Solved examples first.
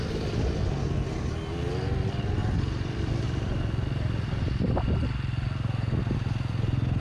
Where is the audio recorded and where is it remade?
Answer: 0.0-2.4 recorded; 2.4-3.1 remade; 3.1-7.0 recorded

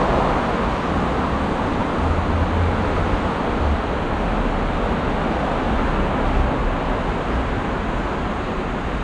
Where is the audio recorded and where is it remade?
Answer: 0.0-9.0 recorded

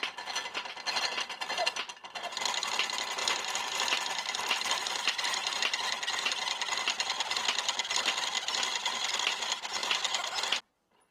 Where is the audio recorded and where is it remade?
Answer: 0.0-3.2 recorded; 3.2-5.6 remade; 5.6-11.1 recorded